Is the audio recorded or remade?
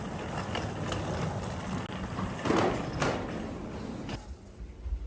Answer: recorded